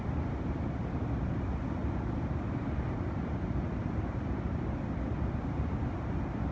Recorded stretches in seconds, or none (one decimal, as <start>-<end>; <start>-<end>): 0.0-6.5